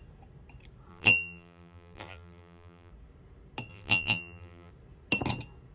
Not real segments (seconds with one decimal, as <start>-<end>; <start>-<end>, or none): 0.9-2.9; 3.7-4.7